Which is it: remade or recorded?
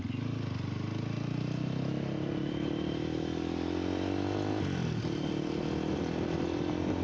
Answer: recorded